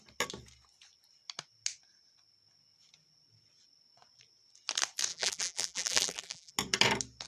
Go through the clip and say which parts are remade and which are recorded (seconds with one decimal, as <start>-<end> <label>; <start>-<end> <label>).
0.0-5.1 recorded; 5.1-6.5 remade; 6.5-7.3 recorded